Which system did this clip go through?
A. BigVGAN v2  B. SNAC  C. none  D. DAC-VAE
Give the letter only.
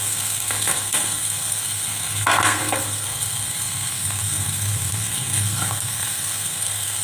B